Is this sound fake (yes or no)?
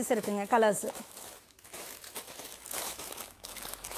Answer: yes